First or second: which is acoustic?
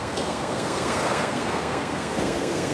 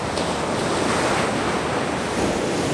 second